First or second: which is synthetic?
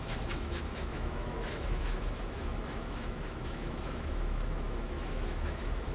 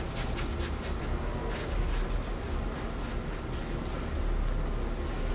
first